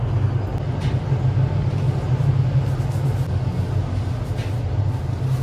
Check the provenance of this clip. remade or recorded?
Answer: recorded